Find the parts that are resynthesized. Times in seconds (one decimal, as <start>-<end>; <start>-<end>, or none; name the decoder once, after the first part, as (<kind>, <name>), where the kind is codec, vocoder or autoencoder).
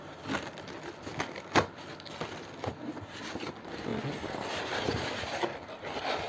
none